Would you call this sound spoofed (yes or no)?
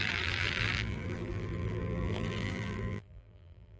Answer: yes